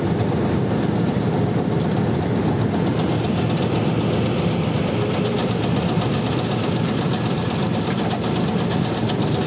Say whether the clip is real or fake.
real